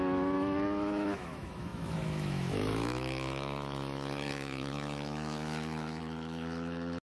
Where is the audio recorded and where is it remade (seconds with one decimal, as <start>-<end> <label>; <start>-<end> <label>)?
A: 0.0-7.1 remade